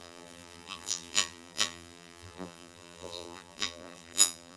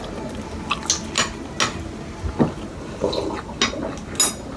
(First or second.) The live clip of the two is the second